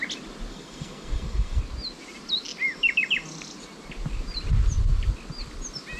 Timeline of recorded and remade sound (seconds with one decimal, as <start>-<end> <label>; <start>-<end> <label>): 0.0-0.5 recorded; 0.5-1.6 remade; 1.6-6.0 recorded